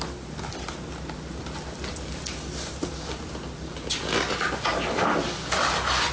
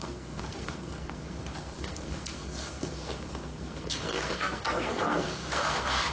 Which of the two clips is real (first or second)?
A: first